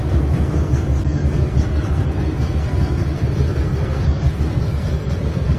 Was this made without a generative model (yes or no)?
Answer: no